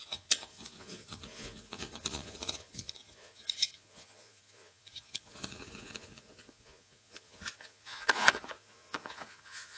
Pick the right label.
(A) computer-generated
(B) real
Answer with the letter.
A